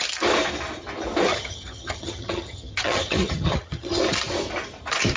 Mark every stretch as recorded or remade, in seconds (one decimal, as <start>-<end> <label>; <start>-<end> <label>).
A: 0.0-1.3 recorded; 1.3-4.0 remade; 4.0-5.2 recorded